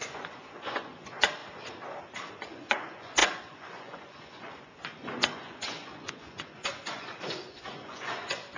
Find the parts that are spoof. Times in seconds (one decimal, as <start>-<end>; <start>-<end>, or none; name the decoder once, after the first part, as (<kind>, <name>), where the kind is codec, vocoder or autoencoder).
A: 0.0-1.4 (vocoder, Vocos); 2.3-8.6

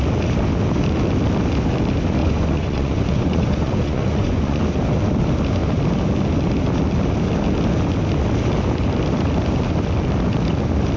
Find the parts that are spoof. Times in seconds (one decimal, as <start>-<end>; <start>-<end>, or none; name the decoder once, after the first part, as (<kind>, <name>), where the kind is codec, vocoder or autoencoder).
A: 2.2-4.6 (vocoder, Vocos)